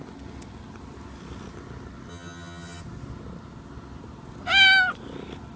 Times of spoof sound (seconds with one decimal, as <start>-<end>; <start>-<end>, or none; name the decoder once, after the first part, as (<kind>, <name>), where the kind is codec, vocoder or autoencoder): 2.1-2.8 (vocoder, HiFi-GAN)